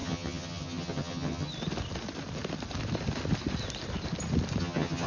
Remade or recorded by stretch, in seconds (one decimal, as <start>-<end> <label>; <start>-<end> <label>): 0.0-1.5 remade; 1.5-4.6 recorded; 4.6-5.1 remade